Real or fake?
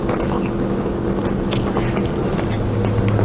real